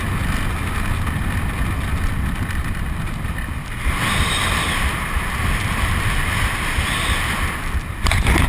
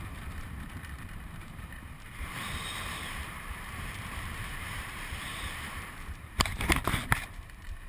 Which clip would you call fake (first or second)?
second